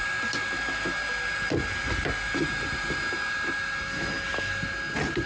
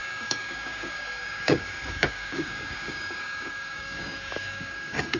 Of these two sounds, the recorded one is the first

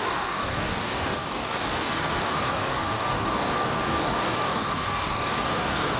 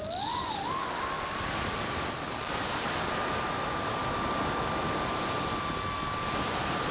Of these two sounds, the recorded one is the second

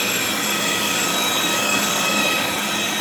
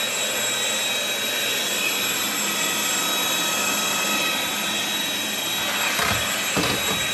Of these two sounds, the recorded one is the second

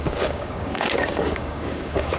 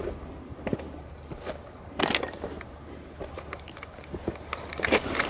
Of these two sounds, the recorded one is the second